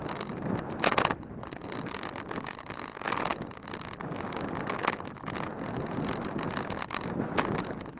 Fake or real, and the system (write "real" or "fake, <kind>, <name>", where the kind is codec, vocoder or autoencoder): real